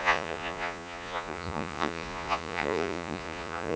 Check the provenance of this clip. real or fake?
fake